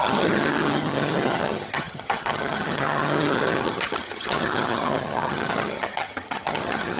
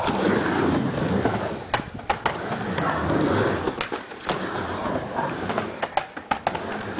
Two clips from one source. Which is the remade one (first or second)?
first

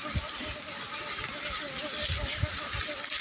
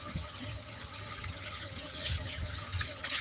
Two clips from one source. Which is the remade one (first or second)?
second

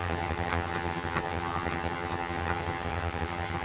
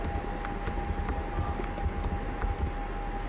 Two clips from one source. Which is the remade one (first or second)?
first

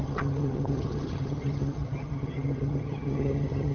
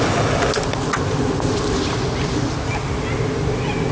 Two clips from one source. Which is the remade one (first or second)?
first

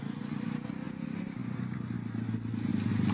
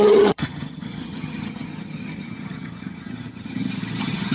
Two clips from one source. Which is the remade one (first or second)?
second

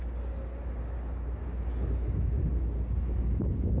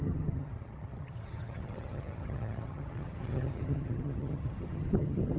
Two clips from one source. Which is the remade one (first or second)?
second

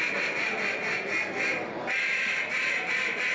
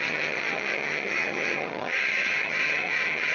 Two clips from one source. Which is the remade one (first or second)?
second